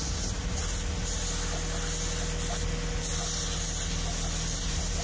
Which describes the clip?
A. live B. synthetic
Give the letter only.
A